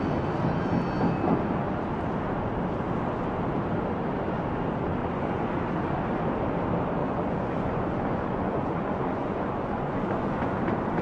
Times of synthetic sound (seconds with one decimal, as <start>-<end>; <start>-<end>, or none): 5.0-5.5; 7.0-10.6